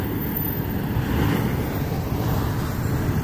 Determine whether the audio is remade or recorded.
recorded